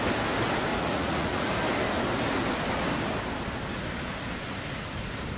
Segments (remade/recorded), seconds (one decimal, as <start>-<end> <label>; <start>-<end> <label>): 0.0-0.7 recorded; 0.7-1.5 remade; 1.5-5.4 recorded